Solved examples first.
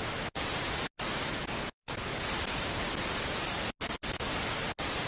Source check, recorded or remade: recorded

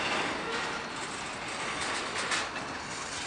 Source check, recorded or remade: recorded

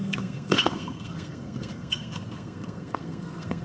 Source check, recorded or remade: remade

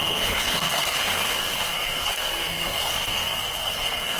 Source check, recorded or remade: remade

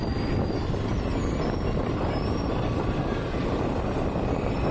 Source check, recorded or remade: recorded